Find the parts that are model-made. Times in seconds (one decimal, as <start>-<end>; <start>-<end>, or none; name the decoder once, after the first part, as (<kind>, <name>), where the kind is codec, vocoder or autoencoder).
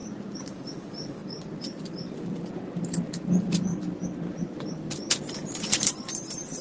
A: 0.0-3.7 (vocoder, BigVGAN v2); 4.4-6.6